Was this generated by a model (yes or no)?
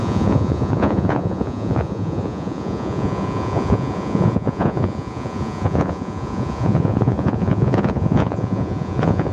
yes